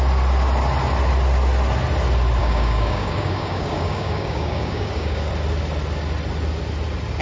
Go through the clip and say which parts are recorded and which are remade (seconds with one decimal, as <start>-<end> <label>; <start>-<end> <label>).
0.0-2.4 recorded; 2.4-5.3 remade; 5.3-7.2 recorded